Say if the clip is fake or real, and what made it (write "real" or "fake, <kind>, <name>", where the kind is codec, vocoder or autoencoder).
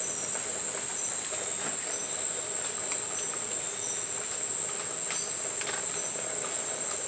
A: real